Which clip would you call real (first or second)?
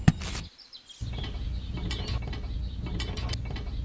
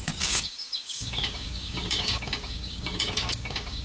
first